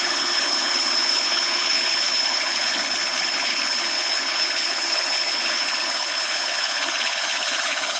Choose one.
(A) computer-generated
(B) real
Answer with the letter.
A